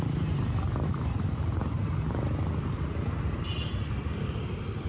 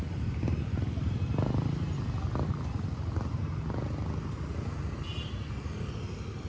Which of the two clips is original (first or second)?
second